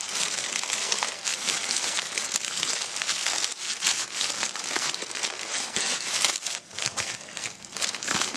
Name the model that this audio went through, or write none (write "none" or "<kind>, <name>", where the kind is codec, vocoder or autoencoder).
codec, SNAC